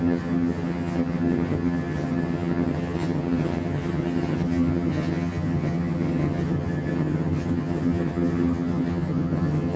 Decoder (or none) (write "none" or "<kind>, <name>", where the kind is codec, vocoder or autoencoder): vocoder, HiFi-GAN